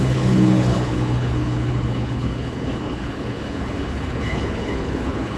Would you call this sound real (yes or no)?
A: no